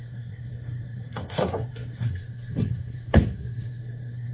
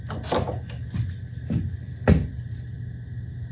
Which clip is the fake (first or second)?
first